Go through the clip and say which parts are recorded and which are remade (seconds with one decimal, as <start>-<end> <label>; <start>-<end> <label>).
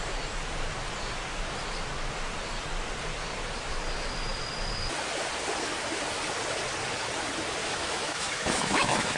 0.0-7.6 recorded; 7.6-9.2 remade